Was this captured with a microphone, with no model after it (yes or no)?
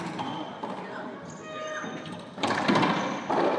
yes